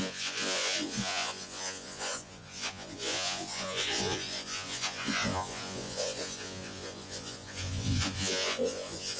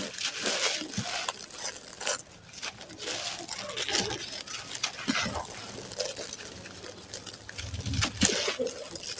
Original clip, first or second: second